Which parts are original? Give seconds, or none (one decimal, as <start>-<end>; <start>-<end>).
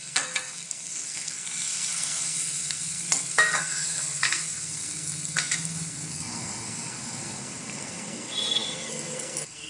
none